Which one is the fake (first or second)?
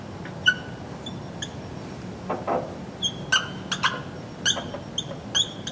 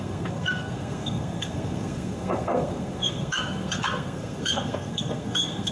second